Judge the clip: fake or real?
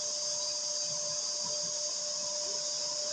real